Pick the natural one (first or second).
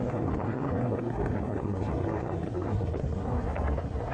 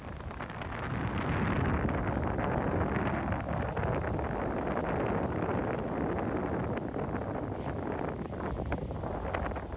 second